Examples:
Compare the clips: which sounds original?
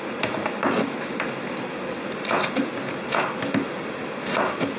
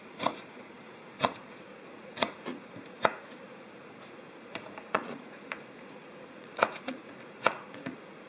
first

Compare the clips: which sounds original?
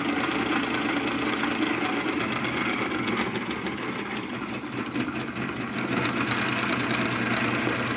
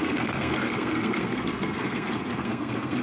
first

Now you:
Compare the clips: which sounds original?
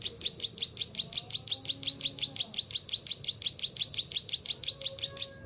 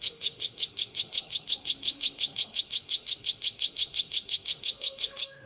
first